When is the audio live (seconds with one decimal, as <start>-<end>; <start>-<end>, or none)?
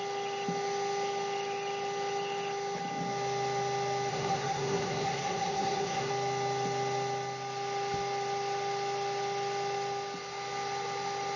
0.0-4.1; 6.1-11.4